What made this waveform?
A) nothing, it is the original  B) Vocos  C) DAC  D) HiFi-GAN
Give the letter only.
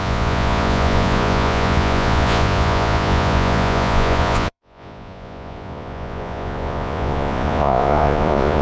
B